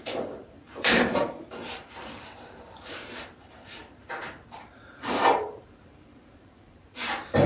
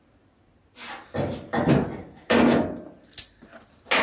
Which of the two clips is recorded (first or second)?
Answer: second